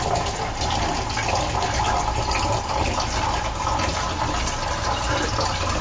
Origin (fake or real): real